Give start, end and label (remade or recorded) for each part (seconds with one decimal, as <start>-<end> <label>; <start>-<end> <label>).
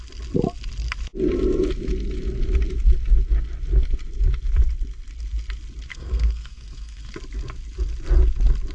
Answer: 0.0-5.9 recorded; 5.9-7.1 remade; 7.1-8.7 recorded